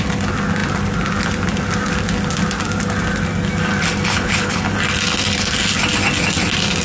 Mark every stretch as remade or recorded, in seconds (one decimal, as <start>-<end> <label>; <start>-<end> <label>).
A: 0.0-4.1 recorded; 4.1-4.6 remade; 4.6-6.8 recorded